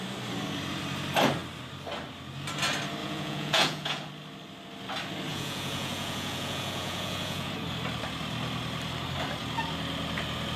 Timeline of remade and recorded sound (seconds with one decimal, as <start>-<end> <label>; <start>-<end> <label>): 0.0-3.0 recorded; 3.0-4.1 remade; 4.1-5.3 recorded; 5.3-7.5 remade; 7.5-10.6 recorded